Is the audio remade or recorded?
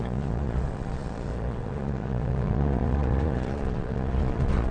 remade